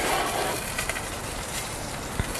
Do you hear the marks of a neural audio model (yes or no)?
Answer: yes